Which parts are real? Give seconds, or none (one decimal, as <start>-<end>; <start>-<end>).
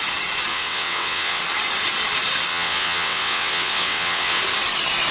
0.0-0.5; 1.4-2.5; 4.4-5.1